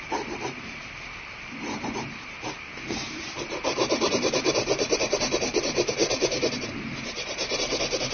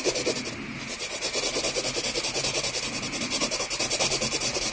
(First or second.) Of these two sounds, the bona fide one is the second